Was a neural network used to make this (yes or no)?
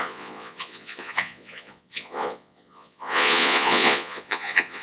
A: yes